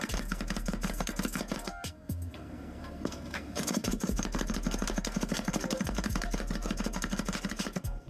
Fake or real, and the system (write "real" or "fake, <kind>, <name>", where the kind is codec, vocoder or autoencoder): fake, codec, SNAC